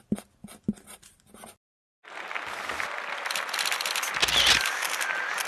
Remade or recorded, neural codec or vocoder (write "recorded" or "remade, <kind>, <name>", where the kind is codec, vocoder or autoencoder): recorded